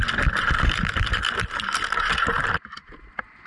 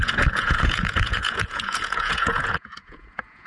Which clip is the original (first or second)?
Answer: first